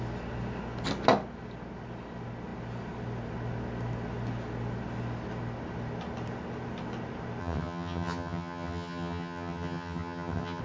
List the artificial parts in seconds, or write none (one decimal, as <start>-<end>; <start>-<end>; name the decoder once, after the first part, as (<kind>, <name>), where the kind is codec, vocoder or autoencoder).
7.4-10.6 (vocoder, HiFi-GAN)